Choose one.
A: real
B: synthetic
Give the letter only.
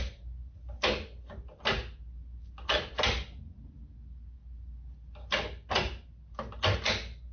A